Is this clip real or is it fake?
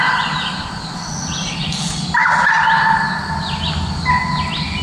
real